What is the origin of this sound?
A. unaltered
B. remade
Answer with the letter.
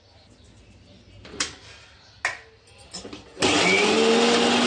A